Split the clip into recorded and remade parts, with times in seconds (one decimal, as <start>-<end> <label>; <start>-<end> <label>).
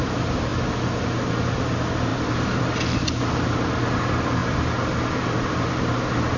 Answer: 0.0-6.4 recorded